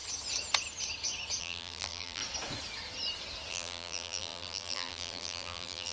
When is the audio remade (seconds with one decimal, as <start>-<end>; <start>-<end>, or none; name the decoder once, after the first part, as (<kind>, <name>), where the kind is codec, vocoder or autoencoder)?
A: 1.4-2.2 (vocoder, BigVGAN v2); 3.5-5.9